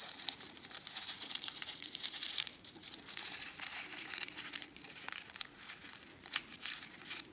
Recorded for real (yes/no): no